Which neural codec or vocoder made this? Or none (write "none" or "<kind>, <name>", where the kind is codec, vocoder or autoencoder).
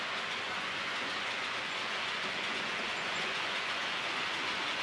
vocoder, Vocos